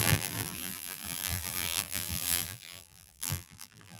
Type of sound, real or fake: fake